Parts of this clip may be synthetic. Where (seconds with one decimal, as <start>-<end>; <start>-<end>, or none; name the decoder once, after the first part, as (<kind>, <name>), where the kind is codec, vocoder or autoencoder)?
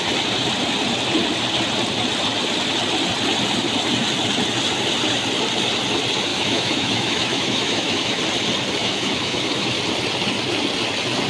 6.3-8.2 (autoencoder, DAC-VAE); 8.8-9.8